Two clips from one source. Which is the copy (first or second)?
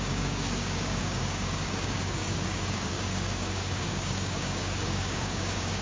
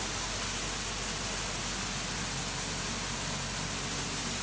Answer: first